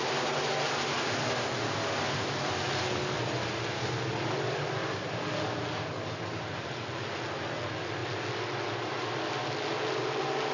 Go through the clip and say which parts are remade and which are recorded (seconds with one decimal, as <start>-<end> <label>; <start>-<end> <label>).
0.0-10.5 recorded